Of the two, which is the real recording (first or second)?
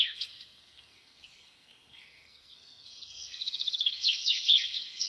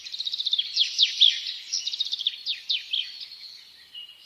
second